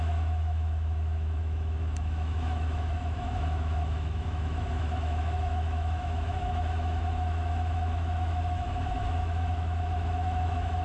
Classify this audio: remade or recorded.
remade